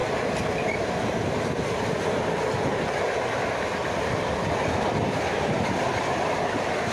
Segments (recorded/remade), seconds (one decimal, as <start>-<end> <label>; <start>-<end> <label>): 0.0-6.9 recorded

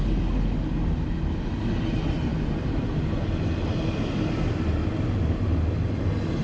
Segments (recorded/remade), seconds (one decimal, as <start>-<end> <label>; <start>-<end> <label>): 0.0-2.3 recorded; 2.3-2.9 remade; 2.9-6.4 recorded

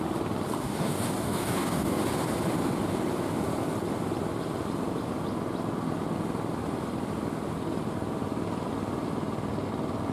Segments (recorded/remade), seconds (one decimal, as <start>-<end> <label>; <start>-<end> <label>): 0.0-0.6 recorded; 0.6-2.0 remade; 2.0-10.1 recorded

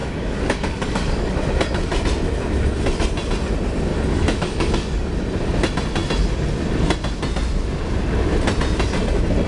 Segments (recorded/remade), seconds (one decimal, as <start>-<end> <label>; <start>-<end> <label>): 0.0-1.3 remade; 1.3-3.9 recorded; 3.9-5.1 remade; 5.1-9.5 recorded

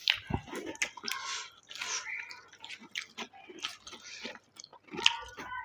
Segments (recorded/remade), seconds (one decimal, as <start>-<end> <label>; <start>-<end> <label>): 0.0-5.6 recorded

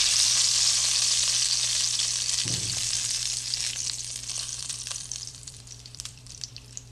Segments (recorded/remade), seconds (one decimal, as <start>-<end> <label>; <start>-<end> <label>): 0.0-4.5 recorded; 4.5-6.5 remade; 6.5-6.9 recorded

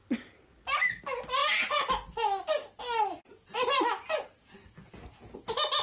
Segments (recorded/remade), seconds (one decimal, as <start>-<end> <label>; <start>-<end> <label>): 0.0-5.8 recorded